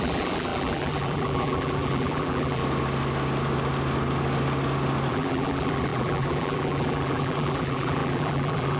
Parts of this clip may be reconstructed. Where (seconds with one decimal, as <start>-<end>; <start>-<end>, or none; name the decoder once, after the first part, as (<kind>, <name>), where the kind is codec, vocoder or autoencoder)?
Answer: 0.0-2.6 (vocoder, BigVGAN v2); 5.1-8.8